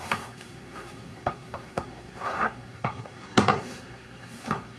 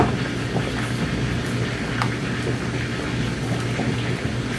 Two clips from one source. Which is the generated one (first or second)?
first